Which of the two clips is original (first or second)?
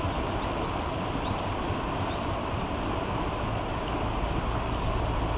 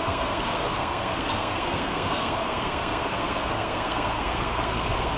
first